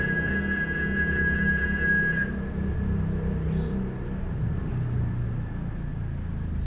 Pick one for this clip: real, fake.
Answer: real